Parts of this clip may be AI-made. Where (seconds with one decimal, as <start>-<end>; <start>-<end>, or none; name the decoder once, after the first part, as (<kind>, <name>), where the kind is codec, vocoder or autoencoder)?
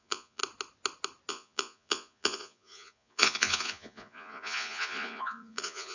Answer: 0.0-0.4 (vocoder, Vocos); 1.3-5.9